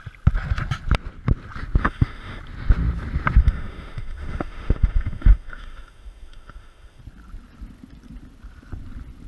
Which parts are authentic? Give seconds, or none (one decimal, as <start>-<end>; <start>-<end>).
0.0-1.8; 2.4-3.4; 7.0-9.3